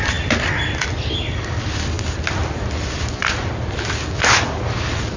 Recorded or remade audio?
recorded